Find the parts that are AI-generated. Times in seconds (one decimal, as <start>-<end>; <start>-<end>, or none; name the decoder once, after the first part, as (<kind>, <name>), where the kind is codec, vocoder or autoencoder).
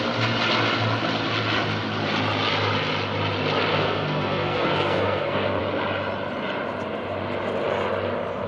3.7-5.6 (codec, SNAC)